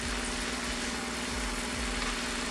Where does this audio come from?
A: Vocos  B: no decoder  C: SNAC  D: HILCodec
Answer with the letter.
B